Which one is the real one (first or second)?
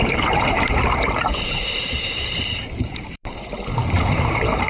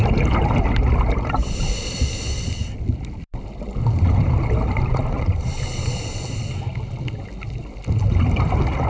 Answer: second